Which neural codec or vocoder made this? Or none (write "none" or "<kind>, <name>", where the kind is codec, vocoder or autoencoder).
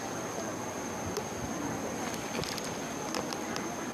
none